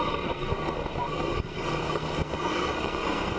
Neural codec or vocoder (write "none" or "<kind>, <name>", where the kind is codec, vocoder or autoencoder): codec, SNAC